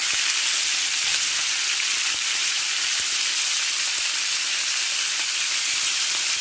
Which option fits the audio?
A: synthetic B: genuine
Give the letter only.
B